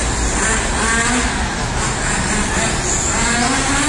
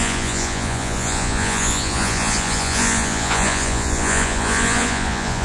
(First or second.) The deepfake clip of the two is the second